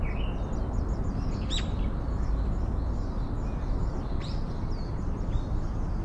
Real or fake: real